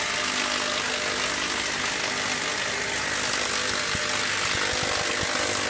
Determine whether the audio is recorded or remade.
recorded